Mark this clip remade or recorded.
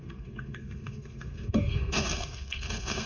remade